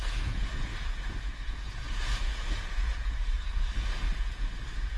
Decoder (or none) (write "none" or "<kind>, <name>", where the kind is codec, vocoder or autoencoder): vocoder, Vocos